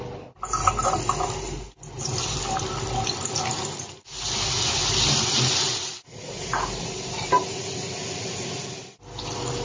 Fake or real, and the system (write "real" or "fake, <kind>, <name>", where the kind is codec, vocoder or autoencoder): real